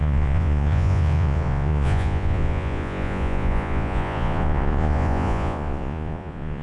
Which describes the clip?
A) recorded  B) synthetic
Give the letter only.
B